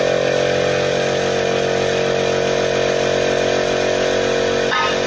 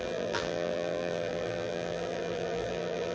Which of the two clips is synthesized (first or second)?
second